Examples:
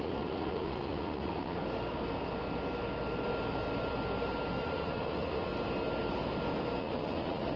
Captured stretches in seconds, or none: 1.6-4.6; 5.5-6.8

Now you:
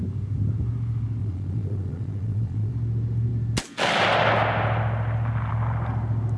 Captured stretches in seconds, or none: 0.0-1.2; 2.7-6.4

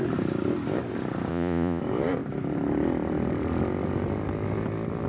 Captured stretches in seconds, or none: 0.0-1.3; 1.8-5.1

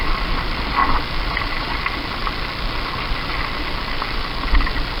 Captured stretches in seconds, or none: 0.0-5.0

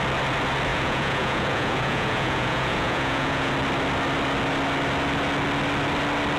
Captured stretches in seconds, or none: 0.0-0.7; 3.5-6.4

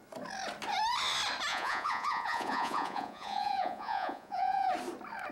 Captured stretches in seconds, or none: 0.0-1.5; 4.7-5.3